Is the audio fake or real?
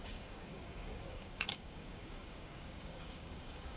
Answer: fake